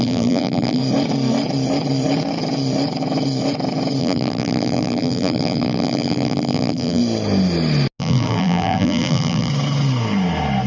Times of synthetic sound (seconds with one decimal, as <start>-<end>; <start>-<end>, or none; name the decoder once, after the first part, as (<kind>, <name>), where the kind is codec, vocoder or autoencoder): 0.0-0.8 (vocoder, BigVGAN v2); 4.0-7.0; 8.0-9.5